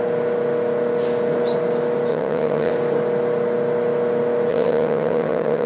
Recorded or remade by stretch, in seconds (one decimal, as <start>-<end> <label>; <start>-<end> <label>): 0.0-2.1 recorded; 2.1-2.7 remade; 2.7-4.5 recorded; 4.5-5.7 remade